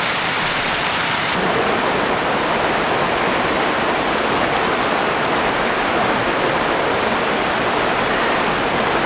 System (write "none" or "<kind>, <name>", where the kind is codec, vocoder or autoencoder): vocoder, BigVGAN v2